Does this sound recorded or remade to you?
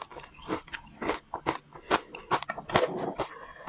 recorded